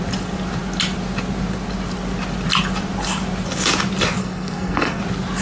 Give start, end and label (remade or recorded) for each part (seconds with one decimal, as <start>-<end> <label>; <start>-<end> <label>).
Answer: 0.0-4.2 recorded; 4.2-5.0 remade; 5.0-5.4 recorded